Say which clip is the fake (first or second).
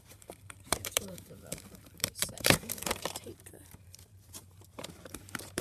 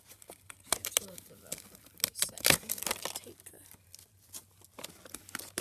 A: first